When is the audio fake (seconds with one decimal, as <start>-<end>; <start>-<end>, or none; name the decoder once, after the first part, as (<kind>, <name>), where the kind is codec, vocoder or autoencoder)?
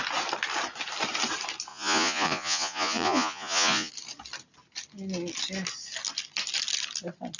1.7-3.9 (vocoder, Vocos)